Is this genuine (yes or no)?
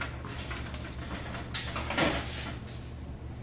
yes